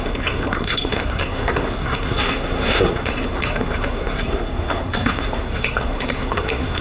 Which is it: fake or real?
fake